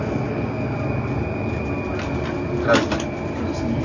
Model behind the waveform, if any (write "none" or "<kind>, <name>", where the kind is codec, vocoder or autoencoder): none